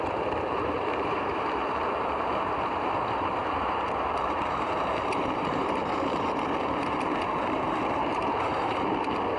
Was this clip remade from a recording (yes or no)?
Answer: yes